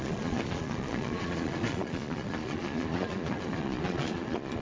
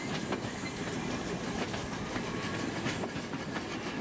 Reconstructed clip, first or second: first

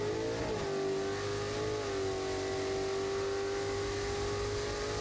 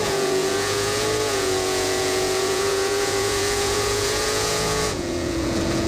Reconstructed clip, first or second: second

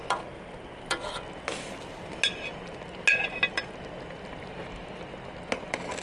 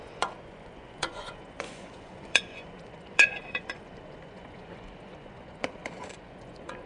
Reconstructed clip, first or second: second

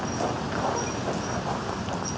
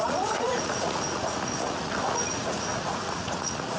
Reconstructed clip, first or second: second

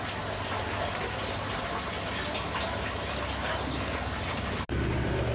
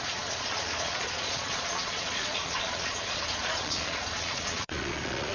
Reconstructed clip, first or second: second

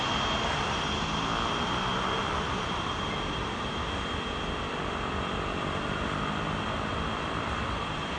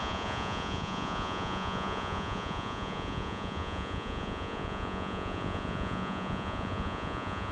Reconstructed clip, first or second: second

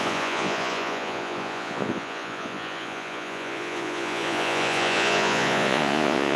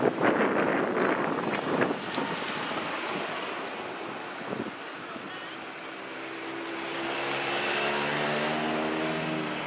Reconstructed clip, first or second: first